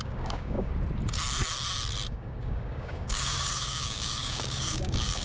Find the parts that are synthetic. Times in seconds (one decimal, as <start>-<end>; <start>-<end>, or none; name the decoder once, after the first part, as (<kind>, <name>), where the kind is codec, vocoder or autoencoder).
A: 0.0-0.7 (codec, DAC); 2.1-5.2